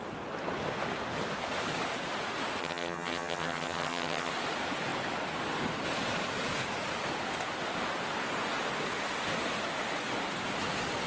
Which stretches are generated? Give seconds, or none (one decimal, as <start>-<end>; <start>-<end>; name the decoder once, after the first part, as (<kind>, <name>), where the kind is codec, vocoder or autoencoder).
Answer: 2.6-4.3 (vocoder, HiFi-GAN)